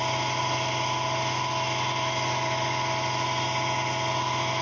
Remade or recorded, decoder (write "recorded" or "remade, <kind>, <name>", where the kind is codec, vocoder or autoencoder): recorded